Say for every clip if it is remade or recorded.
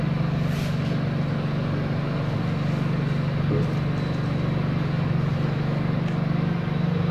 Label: recorded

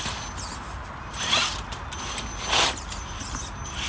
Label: recorded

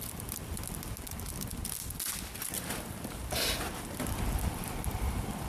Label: recorded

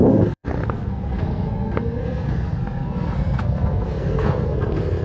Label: remade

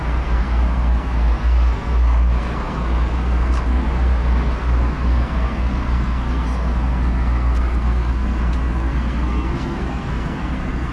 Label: remade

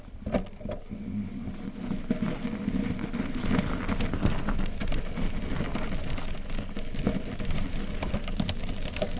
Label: recorded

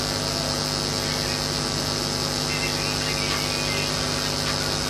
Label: recorded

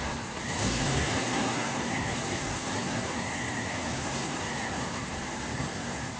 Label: remade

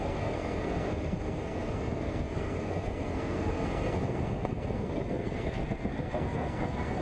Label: remade